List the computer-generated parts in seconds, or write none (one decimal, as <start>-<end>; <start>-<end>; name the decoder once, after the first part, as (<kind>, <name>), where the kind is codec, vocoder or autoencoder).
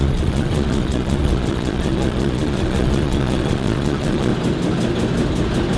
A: 0.0-4.3 (vocoder, Vocos)